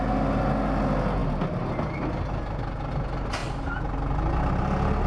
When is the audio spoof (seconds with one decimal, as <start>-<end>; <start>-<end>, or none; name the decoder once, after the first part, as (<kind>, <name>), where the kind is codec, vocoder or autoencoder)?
none